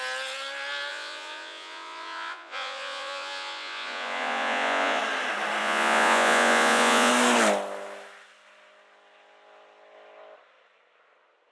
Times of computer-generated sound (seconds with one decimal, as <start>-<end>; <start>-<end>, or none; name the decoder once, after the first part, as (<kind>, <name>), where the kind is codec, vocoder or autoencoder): 0.9-5.0 (vocoder, Vocos); 5.6-7.1